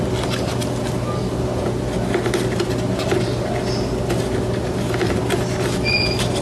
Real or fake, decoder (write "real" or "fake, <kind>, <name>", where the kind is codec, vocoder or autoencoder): real